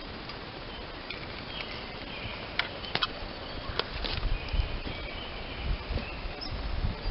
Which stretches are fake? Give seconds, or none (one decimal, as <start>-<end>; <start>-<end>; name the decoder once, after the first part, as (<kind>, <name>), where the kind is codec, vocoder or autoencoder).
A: none